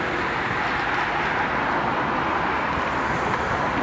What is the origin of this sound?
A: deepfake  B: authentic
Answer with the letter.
B